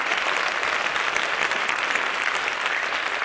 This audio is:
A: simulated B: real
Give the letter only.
B